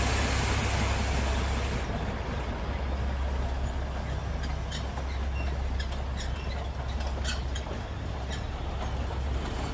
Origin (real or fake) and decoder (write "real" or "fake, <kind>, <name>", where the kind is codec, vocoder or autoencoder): real